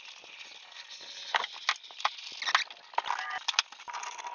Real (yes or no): yes